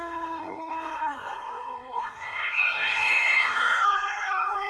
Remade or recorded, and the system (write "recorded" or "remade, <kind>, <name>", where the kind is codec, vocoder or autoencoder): remade, codec, SNAC